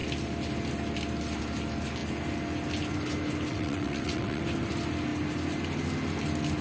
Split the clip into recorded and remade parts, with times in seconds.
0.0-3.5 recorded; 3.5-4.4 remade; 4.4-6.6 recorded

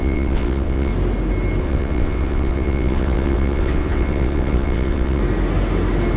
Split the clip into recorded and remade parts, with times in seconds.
0.0-0.9 remade; 0.9-1.6 recorded; 1.6-5.2 remade; 5.2-6.2 recorded

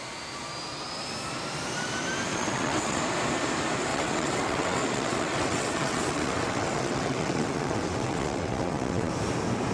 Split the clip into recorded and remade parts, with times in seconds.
0.0-2.3 recorded; 2.3-3.0 remade; 3.0-3.9 recorded; 3.9-9.1 remade; 9.1-9.7 recorded